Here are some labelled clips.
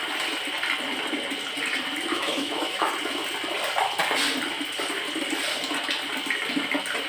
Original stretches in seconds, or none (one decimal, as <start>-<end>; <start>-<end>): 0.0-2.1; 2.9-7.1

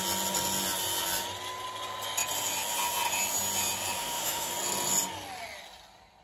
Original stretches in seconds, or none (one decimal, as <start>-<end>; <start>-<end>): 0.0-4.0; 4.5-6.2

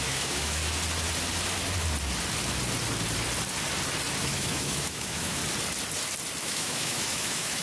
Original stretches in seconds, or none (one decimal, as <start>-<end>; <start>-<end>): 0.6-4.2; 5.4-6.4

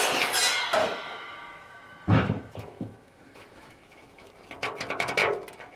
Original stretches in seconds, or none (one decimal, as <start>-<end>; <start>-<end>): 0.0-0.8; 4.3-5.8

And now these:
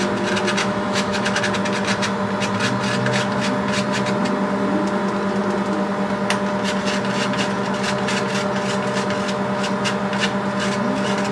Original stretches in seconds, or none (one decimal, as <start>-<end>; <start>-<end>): 0.0-0.6; 1.4-11.3

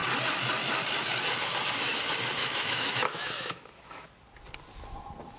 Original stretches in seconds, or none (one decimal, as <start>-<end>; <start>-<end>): 0.0-2.4; 4.1-5.4

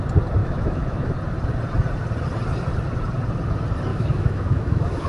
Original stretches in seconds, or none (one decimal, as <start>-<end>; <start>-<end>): 0.0-0.4; 1.1-3.9

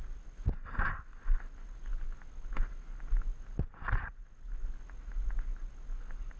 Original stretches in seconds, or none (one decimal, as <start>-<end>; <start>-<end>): 0.0-6.4